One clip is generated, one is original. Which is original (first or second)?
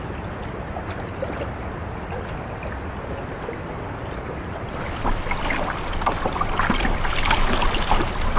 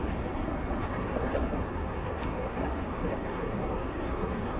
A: first